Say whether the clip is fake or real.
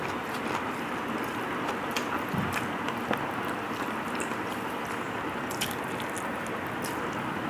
real